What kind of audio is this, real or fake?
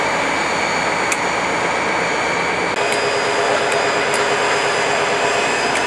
real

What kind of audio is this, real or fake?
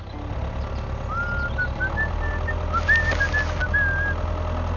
real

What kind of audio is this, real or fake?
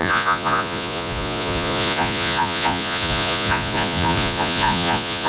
fake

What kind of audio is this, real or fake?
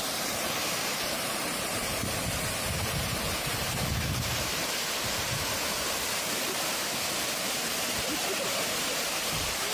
fake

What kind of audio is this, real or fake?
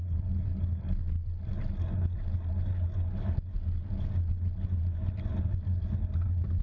real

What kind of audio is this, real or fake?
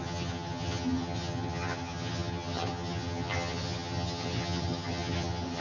fake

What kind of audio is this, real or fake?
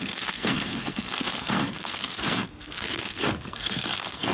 fake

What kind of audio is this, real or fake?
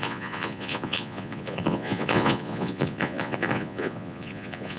fake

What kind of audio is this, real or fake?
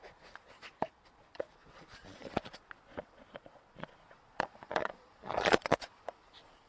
fake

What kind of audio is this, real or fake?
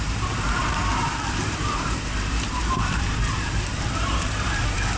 fake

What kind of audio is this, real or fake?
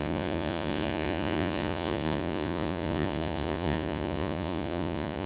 fake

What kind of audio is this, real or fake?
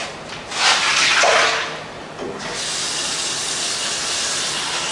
real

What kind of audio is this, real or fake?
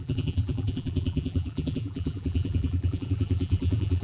fake